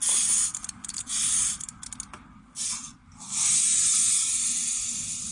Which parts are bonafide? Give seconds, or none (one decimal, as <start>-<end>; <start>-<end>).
0.0-0.5; 1.4-5.3